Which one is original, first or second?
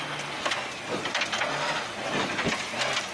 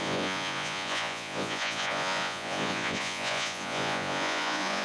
first